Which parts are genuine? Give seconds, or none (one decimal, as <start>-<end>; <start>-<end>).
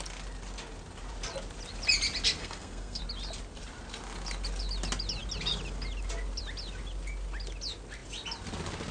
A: 0.0-2.4; 3.0-8.9